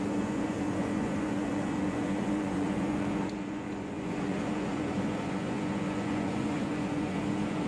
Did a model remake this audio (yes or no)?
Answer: yes